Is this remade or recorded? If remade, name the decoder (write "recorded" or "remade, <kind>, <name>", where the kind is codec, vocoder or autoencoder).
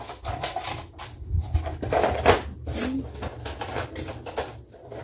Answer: recorded